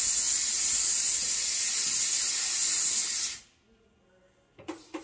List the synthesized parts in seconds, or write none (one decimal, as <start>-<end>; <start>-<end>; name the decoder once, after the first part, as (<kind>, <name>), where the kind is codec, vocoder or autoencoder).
none